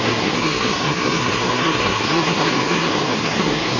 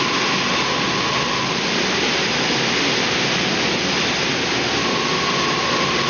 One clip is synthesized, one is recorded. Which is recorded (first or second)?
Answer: second